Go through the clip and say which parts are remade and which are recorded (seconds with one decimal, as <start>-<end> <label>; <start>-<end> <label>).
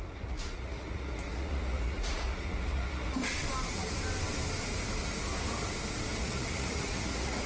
0.0-3.2 remade; 3.2-6.2 recorded; 6.2-7.5 remade